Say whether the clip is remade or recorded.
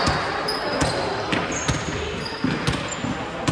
recorded